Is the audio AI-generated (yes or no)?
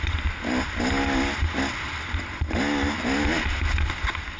no